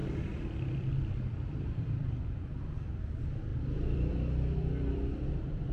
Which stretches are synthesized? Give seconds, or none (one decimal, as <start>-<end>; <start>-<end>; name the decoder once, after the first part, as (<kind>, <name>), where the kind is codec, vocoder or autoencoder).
0.0-5.7 (vocoder, BigVGAN v2)